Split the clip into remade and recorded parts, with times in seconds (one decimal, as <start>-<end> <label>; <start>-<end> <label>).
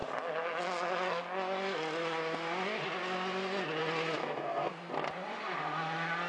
0.0-4.2 recorded; 4.2-4.9 remade; 4.9-6.3 recorded